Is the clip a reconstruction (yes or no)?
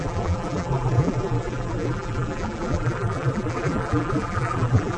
yes